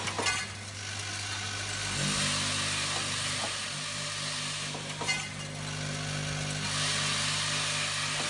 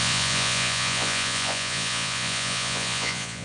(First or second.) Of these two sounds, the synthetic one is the second